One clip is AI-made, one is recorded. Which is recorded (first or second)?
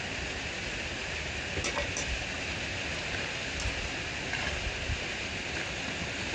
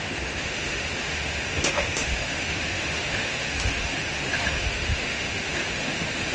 first